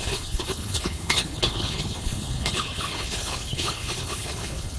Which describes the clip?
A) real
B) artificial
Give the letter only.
B